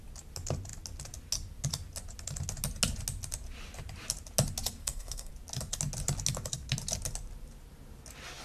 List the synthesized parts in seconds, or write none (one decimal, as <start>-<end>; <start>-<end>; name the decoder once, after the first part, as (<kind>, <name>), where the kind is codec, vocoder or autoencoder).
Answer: 4.8-5.3 (codec, SNAC)